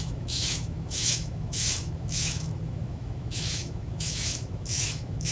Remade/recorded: remade